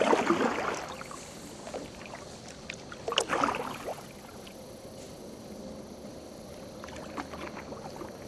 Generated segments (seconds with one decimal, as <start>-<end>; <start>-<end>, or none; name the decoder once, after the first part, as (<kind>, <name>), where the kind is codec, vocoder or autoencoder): none